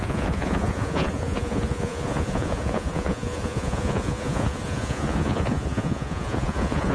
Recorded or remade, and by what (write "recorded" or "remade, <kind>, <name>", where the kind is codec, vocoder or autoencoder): remade, vocoder, Vocos